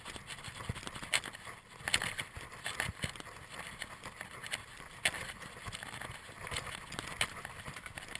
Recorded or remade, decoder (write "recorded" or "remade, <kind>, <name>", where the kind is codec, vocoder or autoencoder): recorded